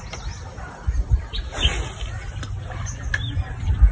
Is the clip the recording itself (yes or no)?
yes